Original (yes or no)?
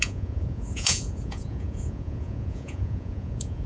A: no